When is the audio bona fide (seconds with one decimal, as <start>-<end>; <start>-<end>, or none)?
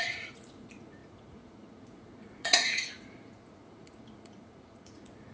none